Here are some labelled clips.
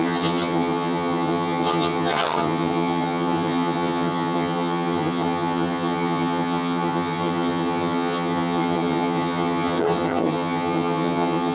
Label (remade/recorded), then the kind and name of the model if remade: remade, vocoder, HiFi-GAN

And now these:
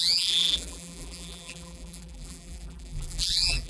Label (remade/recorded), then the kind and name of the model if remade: remade, vocoder, BigVGAN v2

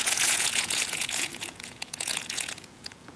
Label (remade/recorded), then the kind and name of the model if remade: remade, vocoder, Vocos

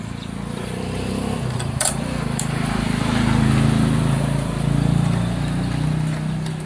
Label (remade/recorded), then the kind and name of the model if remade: remade, vocoder, BigVGAN v2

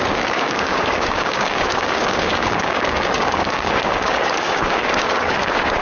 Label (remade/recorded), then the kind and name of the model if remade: remade, codec, DAC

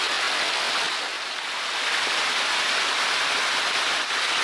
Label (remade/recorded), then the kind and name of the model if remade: recorded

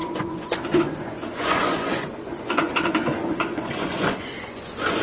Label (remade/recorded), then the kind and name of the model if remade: remade, vocoder, Vocos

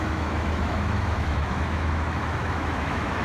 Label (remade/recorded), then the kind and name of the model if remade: remade, autoencoder, DAC-VAE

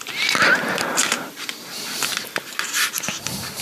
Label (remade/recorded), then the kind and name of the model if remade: remade, vocoder, BigVGAN v2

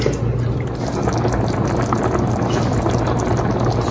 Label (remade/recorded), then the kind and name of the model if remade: recorded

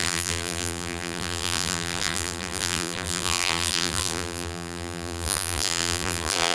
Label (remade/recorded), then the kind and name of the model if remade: remade, vocoder, BigVGAN v2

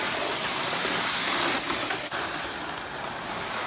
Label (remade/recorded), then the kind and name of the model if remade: recorded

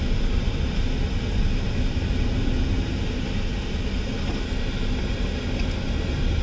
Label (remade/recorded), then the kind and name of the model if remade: recorded